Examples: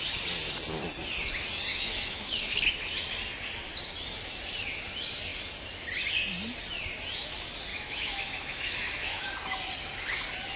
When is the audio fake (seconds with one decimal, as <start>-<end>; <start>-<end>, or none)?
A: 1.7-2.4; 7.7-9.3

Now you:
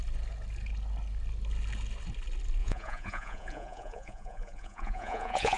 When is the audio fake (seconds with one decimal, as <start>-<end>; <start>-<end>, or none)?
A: 2.6-5.6

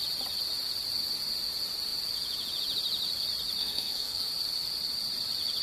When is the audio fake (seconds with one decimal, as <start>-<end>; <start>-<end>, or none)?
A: 3.6-4.3